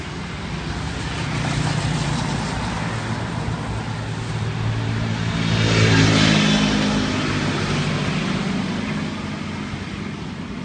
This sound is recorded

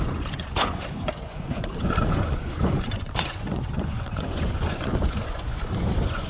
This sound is remade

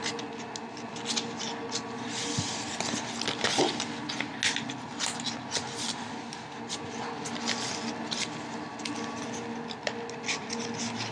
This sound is recorded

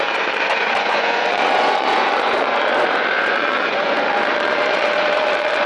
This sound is remade